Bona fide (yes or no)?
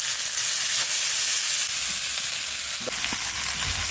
yes